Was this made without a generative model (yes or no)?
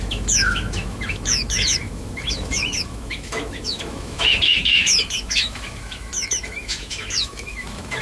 no